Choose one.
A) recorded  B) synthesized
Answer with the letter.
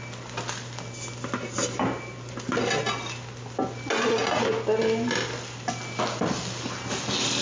A